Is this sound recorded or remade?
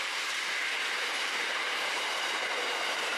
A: remade